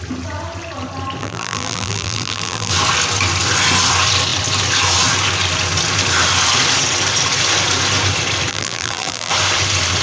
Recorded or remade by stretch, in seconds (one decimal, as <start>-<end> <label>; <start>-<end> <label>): 0.0-1.2 recorded; 1.2-2.7 remade; 2.7-8.5 recorded; 8.5-9.3 remade; 9.3-10.0 recorded